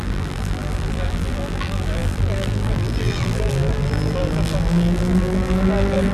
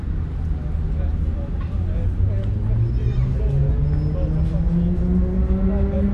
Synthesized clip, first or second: first